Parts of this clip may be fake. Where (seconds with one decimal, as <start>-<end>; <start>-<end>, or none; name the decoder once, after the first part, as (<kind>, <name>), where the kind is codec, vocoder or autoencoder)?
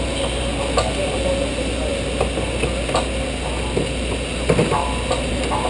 none